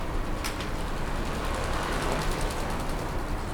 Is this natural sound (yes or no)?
yes